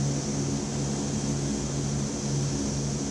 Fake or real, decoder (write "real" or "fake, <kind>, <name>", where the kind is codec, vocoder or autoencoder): real